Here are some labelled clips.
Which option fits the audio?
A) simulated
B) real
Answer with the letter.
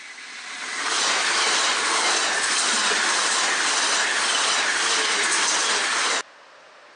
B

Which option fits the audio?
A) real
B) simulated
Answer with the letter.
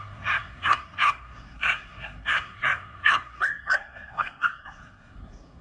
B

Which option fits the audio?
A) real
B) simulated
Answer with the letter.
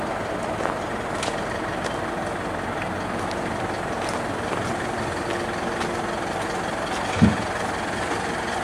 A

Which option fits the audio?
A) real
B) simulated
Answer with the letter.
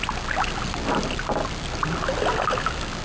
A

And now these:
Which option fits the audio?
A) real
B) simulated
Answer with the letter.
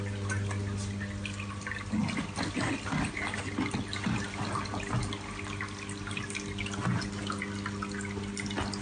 A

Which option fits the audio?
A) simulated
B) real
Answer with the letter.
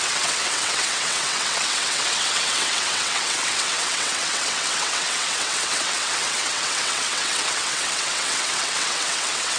A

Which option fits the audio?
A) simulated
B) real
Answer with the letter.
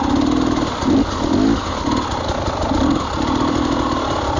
A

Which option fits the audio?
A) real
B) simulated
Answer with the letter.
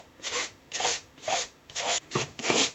B